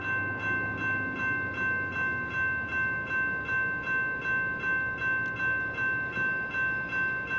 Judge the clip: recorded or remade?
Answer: recorded